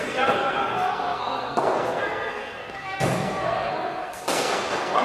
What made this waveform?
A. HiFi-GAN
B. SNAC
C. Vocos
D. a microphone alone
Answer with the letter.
B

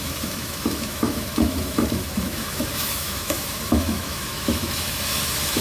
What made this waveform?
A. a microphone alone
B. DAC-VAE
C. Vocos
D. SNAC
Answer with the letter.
B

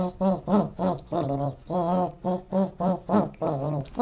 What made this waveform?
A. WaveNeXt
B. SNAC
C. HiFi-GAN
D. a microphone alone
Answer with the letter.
D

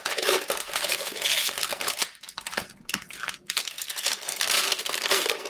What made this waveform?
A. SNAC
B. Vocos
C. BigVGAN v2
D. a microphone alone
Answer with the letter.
A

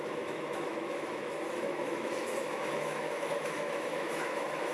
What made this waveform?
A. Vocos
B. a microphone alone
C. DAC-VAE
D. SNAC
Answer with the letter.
C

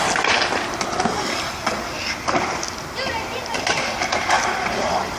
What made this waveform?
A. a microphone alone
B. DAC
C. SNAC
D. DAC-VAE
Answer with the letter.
A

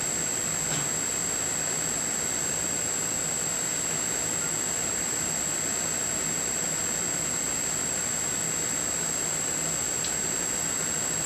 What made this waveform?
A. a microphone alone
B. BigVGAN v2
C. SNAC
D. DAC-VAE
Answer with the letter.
A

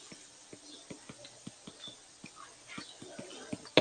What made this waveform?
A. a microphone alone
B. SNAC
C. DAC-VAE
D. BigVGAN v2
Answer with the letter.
A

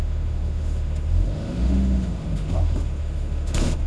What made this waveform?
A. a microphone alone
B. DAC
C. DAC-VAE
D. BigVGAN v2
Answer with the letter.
C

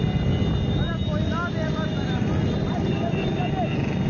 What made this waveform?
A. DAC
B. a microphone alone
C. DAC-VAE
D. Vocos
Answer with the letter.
B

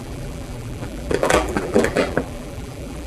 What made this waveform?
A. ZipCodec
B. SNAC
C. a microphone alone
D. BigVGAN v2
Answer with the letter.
D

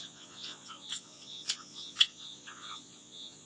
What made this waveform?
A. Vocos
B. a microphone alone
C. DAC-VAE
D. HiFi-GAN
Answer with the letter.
A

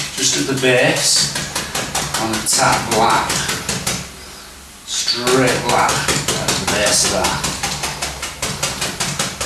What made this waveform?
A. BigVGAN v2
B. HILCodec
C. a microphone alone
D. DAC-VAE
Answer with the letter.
C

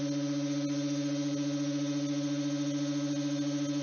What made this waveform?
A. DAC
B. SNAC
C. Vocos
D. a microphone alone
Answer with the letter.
D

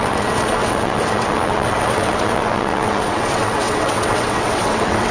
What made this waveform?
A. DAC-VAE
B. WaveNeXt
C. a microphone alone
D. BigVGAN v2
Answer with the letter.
B